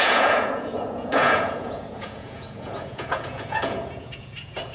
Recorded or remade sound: remade